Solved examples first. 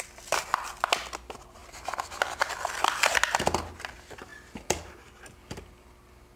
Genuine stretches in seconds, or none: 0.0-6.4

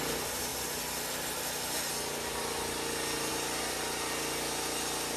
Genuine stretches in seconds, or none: 0.0-5.2

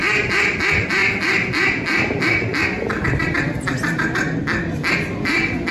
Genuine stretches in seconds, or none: 0.0-5.7

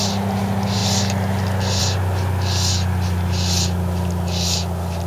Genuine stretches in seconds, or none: 0.0-5.1

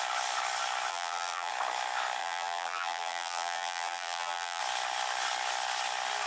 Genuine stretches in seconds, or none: 0.0-0.9; 1.5-2.2; 4.6-6.3

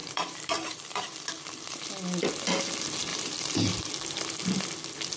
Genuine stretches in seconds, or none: 1.3-3.1; 3.9-5.2